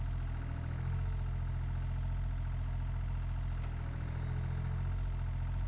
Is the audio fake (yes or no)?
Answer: no